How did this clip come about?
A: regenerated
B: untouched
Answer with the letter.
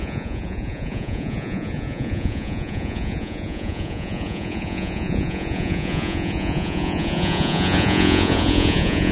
A